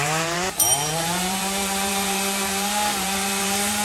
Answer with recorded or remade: remade